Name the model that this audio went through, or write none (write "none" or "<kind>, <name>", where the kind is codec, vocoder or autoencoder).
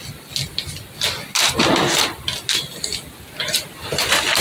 none